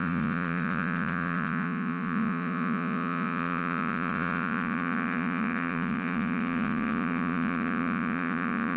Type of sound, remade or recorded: remade